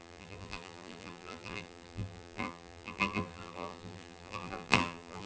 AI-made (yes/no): yes